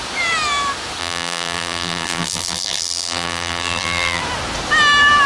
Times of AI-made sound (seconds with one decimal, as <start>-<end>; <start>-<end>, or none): 1.0-4.2